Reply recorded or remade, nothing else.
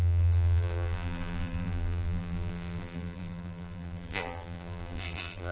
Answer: remade